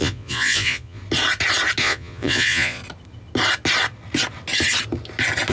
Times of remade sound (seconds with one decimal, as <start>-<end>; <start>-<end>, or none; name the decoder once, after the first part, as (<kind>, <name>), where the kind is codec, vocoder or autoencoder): 0.0-1.0 (vocoder, Vocos); 1.8-2.8